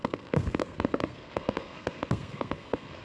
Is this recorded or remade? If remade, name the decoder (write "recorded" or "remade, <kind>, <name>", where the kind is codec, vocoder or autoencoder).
remade, codec, SNAC